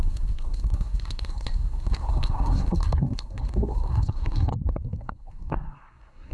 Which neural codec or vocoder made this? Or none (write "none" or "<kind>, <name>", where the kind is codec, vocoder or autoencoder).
codec, SNAC